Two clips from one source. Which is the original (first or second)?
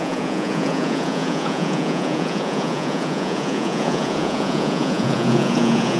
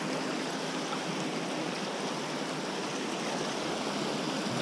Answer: second